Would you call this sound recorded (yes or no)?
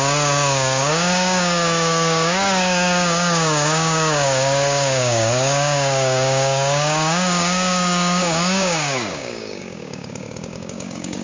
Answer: no